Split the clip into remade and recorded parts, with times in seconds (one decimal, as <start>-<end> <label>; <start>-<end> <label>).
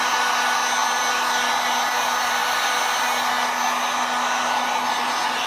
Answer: 0.0-5.5 recorded